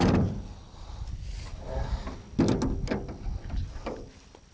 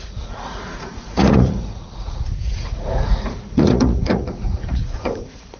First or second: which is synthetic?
second